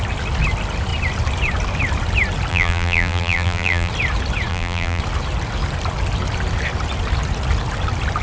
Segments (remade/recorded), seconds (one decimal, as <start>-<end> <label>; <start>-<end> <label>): 0.0-2.5 recorded; 2.5-3.9 remade; 3.9-4.5 recorded; 4.5-5.0 remade; 5.0-8.2 recorded

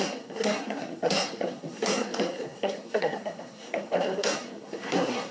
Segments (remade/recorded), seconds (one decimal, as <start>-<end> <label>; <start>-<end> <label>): 0.0-5.3 remade

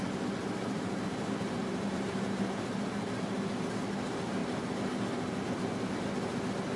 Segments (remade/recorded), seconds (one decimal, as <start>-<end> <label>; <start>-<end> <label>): 0.0-0.4 recorded; 0.4-3.3 remade; 3.3-6.8 recorded